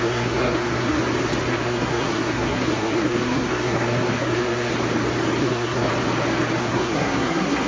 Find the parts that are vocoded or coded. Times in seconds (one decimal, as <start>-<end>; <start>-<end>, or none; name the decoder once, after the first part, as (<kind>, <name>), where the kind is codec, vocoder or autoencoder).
0.0-1.0 (codec, SNAC); 1.5-4.7; 5.4-5.9; 6.6-7.7